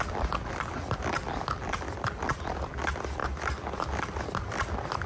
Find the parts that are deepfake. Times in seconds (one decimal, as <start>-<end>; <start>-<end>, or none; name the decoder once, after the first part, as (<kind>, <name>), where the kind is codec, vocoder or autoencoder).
none